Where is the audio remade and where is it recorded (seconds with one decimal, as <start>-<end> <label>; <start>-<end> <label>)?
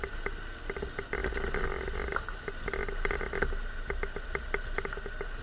0.0-5.4 recorded